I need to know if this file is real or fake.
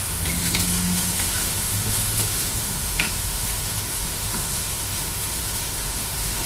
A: fake